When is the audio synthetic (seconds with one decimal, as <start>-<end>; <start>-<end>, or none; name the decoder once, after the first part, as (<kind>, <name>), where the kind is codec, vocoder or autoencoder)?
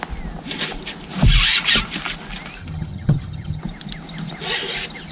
2.6-3.6 (vocoder, HiFi-GAN)